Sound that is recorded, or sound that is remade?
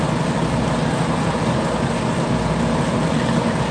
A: recorded